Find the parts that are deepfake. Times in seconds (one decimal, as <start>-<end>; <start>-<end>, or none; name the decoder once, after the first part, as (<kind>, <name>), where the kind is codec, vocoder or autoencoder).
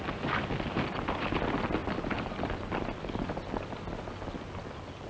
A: none